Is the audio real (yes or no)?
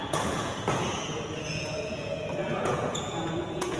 no